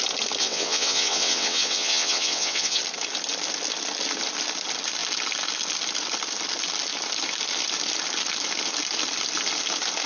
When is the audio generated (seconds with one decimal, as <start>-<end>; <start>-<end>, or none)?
0.4-2.8